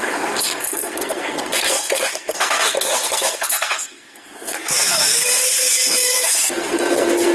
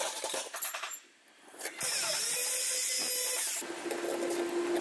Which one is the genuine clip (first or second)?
second